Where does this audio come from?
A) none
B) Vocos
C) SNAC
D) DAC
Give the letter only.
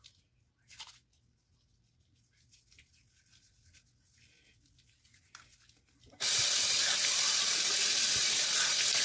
A